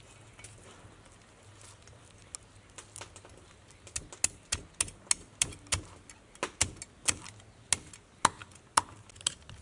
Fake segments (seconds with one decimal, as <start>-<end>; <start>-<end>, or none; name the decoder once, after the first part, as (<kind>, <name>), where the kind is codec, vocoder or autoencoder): none